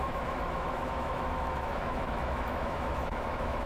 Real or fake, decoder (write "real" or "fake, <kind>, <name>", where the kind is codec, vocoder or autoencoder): fake, autoencoder, DAC-VAE